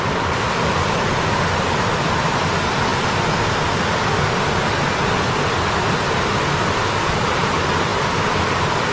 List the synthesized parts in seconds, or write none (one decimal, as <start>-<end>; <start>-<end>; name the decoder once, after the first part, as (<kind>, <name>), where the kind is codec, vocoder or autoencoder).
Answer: none